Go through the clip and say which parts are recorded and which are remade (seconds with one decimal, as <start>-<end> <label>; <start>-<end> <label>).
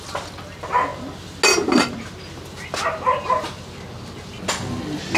0.0-5.2 recorded